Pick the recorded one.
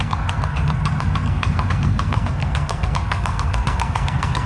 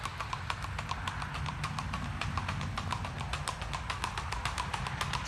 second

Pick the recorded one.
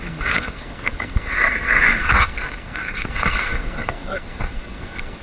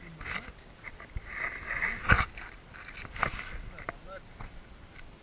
second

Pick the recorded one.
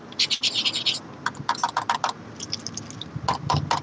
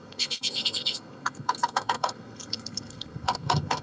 first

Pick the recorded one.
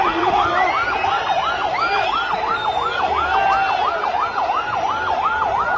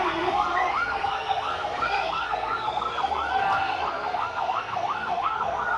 first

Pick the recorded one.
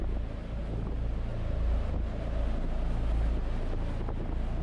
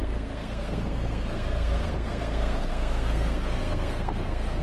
first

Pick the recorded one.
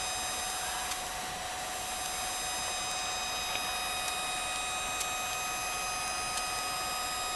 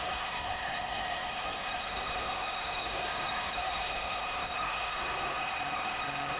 first